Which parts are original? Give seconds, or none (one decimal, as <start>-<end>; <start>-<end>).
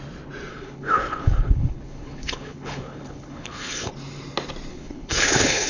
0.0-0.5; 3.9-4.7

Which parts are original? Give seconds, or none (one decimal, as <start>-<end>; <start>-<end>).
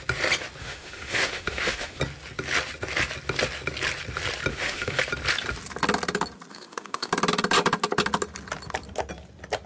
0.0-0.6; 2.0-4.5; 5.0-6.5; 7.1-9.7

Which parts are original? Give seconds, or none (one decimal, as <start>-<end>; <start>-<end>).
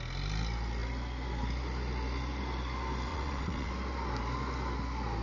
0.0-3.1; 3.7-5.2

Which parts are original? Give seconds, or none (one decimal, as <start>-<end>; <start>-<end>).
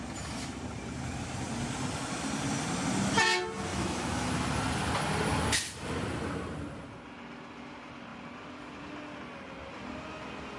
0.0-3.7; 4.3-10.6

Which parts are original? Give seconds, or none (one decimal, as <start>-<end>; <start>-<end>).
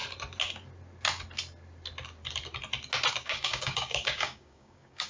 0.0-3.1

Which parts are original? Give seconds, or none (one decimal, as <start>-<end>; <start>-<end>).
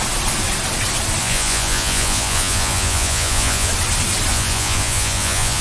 0.0-1.2; 3.7-4.3